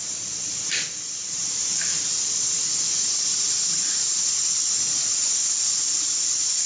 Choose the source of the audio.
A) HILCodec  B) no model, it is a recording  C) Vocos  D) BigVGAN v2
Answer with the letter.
B